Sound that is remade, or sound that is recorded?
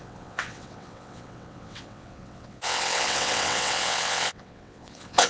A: remade